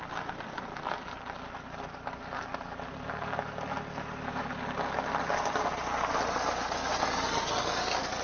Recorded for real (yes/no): yes